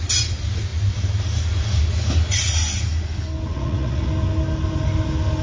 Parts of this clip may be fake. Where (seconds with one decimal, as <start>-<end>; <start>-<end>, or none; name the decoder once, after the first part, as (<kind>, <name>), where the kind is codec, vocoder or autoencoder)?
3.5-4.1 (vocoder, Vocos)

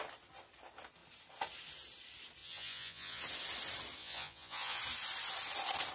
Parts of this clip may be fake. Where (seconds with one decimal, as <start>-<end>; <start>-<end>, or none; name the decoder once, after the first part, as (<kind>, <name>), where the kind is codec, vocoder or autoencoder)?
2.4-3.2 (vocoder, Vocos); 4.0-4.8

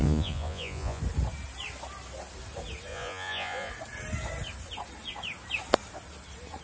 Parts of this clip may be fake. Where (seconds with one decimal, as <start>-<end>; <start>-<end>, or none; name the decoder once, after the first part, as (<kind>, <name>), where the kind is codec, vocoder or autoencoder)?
0.0-1.0 (vocoder, Vocos); 2.9-3.7